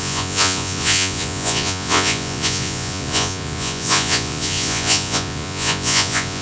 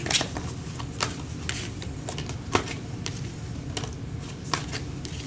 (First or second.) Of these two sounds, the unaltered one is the second